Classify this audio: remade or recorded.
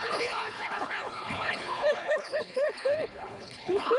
remade